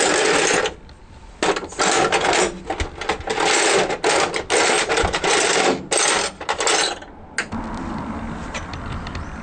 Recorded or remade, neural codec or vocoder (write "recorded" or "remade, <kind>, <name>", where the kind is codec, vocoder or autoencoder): recorded